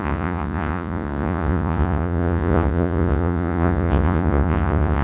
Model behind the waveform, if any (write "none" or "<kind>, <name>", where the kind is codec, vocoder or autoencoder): vocoder, Vocos